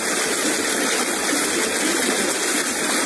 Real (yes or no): yes